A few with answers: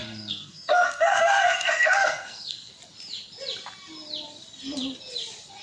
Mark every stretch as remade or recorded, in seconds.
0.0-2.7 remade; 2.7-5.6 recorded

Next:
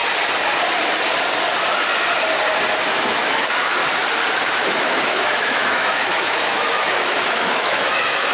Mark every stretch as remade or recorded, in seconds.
0.0-2.8 recorded; 2.8-3.8 remade; 3.8-4.5 recorded; 4.5-8.3 remade